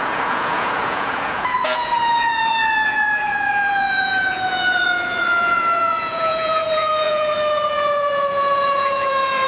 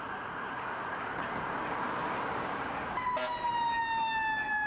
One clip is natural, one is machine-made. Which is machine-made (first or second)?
first